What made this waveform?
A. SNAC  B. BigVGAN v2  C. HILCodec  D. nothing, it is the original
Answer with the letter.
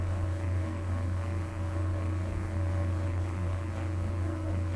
A